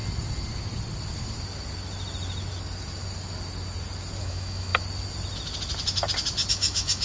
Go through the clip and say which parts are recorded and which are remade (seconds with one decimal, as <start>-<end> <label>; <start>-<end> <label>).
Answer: 0.0-4.2 recorded; 4.2-4.7 remade; 4.7-6.5 recorded; 6.5-7.0 remade